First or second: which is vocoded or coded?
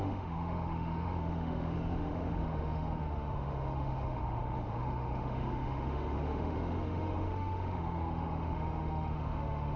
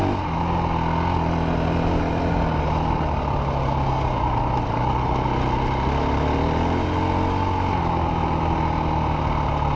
first